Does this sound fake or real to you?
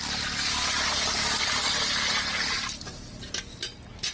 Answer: real